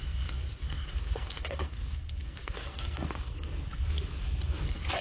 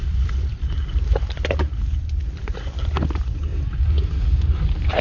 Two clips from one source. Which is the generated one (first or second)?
first